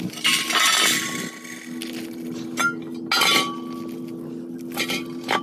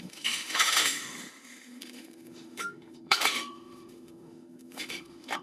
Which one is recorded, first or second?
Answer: first